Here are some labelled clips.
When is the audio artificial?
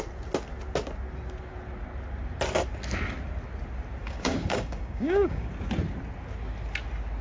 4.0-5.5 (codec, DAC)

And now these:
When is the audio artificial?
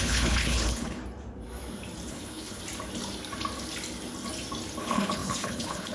0.0-1.0 (codec, HILCodec); 2.1-2.6; 4.8-5.9